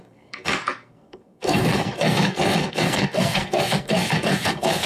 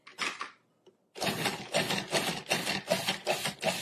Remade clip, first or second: first